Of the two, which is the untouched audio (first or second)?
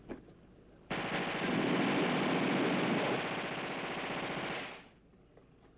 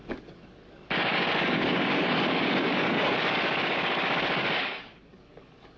first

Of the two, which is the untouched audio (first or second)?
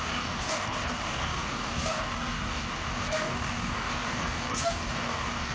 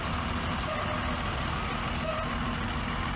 second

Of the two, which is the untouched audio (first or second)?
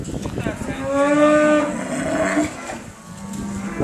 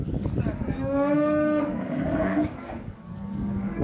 first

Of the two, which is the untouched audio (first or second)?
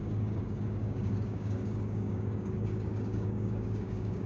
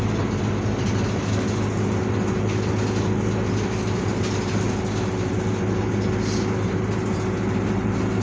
second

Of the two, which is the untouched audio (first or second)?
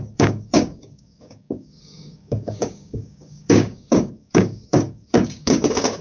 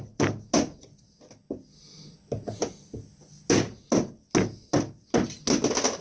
second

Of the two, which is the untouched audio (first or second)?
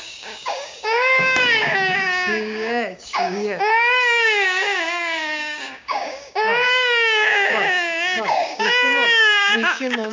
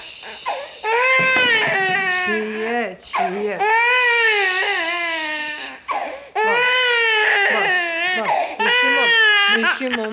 second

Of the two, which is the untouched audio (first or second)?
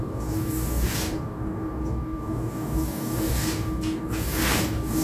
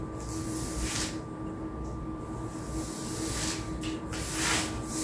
second